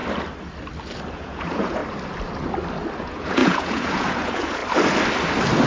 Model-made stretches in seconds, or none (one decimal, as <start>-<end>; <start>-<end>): 1.1-1.8; 3.0-4.6